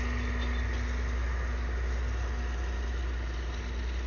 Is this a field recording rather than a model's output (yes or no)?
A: yes